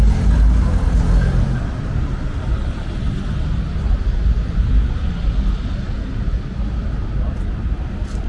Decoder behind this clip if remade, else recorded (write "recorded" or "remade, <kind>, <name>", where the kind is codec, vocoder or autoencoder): recorded